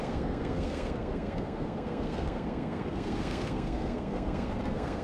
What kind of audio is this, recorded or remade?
remade